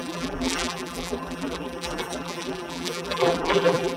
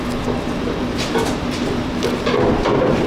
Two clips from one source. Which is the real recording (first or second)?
second